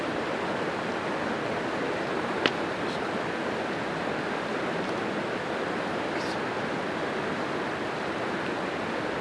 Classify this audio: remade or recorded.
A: recorded